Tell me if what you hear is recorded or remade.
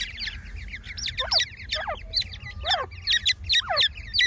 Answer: recorded